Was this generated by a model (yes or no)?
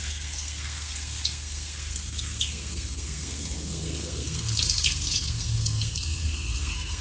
yes